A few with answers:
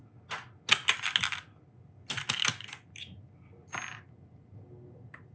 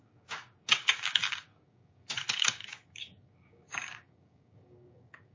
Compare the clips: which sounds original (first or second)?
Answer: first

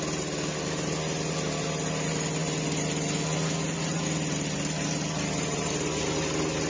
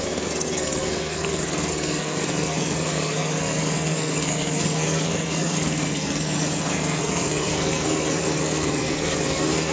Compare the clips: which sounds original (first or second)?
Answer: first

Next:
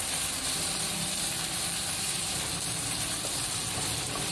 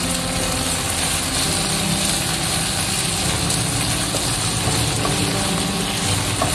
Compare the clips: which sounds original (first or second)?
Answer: second